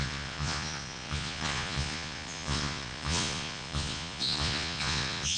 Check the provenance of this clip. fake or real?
fake